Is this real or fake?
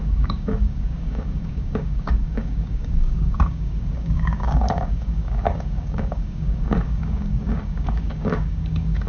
fake